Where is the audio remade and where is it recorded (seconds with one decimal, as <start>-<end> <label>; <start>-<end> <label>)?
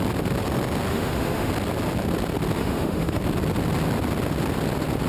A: 0.0-0.9 recorded; 0.9-1.5 remade; 1.5-2.6 recorded; 2.6-3.2 remade; 3.2-5.1 recorded